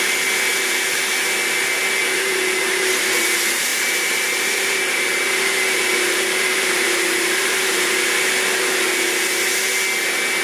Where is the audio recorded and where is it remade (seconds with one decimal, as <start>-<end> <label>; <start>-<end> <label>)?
0.0-2.0 recorded; 2.0-2.9 remade; 2.9-3.7 recorded; 3.7-7.9 remade; 7.9-10.4 recorded